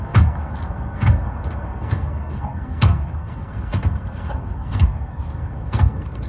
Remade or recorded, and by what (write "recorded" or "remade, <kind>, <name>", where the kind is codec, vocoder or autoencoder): remade, codec, SNAC